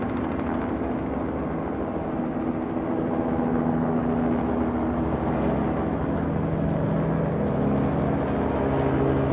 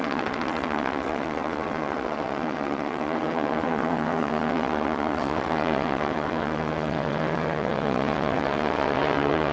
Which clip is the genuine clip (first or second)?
first